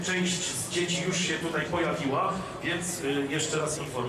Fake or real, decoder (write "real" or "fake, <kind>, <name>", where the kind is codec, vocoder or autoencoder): real